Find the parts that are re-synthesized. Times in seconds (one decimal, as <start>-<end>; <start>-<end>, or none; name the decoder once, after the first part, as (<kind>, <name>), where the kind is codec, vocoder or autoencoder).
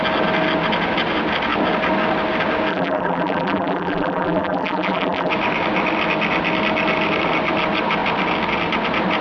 2.7-5.3 (vocoder, BigVGAN v2)